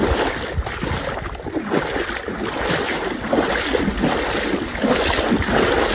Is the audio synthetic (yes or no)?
no